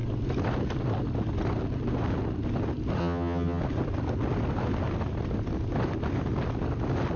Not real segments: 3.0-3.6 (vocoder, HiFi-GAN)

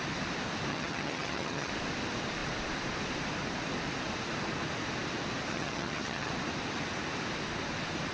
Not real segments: 0.7-1.7 (vocoder, HiFi-GAN); 5.5-6.3

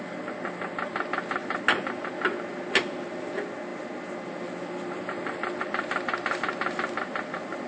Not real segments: none

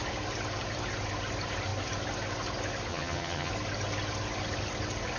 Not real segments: 2.9-3.5 (vocoder, HiFi-GAN)

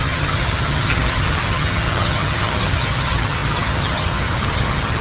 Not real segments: 0.0-5.0 (vocoder, HiFi-GAN)

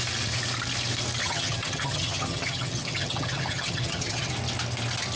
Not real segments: 1.2-4.3 (vocoder, HiFi-GAN)

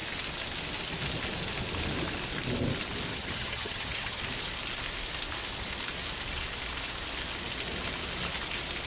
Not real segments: 3.1-4.2 (vocoder, HiFi-GAN)

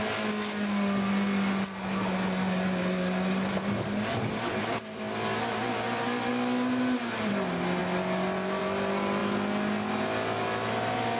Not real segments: none